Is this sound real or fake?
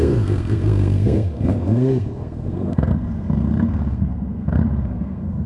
fake